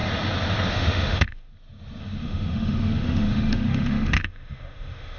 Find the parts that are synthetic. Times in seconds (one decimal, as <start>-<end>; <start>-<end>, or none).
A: 0.7-1.5; 2.0-5.2